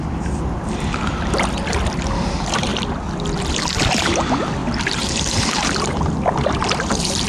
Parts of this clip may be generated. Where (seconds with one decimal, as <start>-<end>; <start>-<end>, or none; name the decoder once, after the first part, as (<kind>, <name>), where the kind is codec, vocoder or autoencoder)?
4.6-6.1 (vocoder, BigVGAN v2)